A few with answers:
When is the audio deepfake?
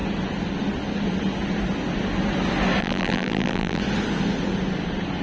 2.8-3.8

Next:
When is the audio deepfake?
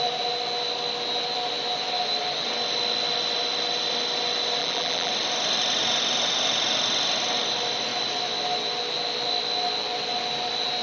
4.6-5.1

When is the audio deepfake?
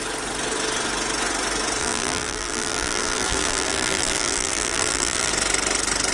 1.8-5.3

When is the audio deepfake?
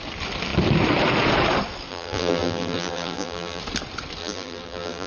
1.9-3.6; 4.2-5.1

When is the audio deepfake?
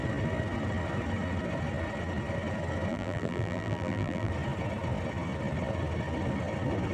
2.9-4.3